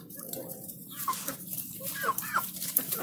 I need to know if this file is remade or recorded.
remade